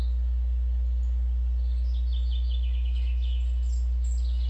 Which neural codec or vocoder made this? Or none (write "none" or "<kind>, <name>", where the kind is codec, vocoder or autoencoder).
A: none